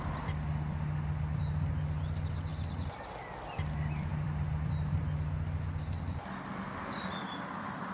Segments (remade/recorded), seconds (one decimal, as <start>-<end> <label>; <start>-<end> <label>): 0.0-4.1 recorded; 4.1-5.0 remade; 5.0-7.9 recorded

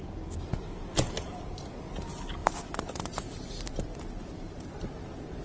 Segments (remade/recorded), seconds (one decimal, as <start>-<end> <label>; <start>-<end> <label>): 0.0-2.4 recorded; 2.4-4.0 remade; 4.0-5.4 recorded